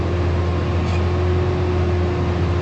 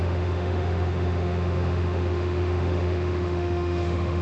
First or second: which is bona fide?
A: first